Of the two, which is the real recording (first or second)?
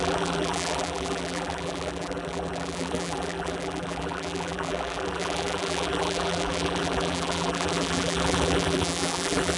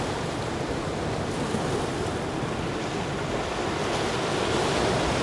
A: second